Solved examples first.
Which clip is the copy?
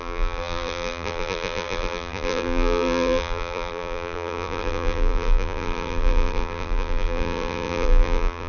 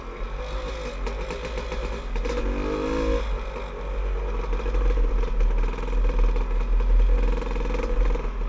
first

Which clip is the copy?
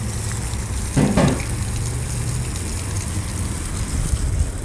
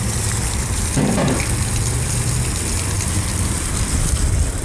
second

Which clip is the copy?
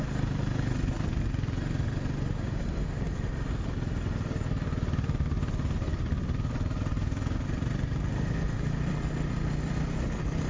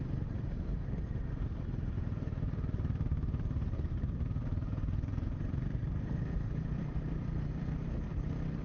second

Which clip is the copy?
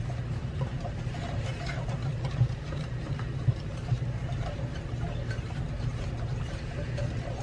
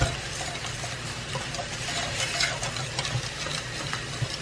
first